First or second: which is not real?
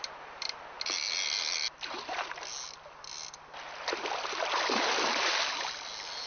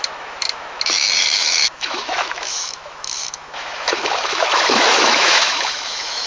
second